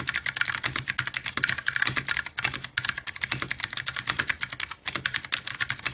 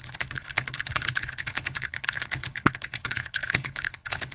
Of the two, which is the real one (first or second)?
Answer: first